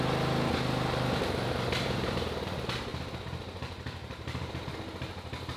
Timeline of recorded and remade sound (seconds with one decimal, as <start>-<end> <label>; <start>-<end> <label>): 0.0-2.9 recorded; 2.9-4.7 remade; 4.7-5.6 recorded